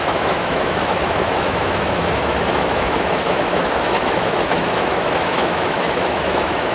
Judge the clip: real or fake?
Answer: fake